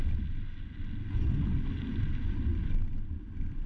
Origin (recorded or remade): recorded